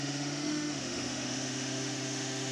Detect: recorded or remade remade